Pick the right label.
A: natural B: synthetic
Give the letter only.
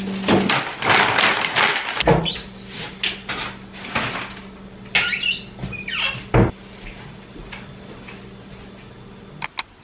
A